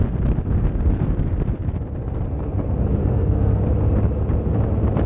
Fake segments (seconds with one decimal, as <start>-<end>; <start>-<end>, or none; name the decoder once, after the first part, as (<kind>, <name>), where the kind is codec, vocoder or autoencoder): 3.0-3.6 (codec, SNAC)